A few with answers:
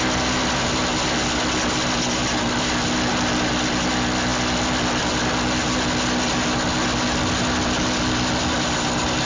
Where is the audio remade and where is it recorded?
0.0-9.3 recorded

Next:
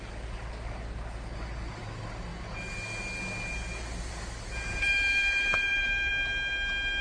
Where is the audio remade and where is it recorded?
0.0-4.7 recorded; 4.7-6.1 remade; 6.1-7.0 recorded

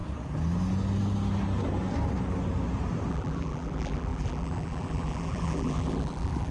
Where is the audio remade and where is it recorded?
0.0-3.1 recorded; 3.1-6.5 remade

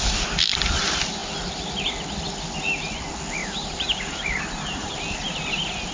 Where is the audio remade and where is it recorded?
0.0-3.4 recorded; 3.4-4.9 remade; 4.9-5.9 recorded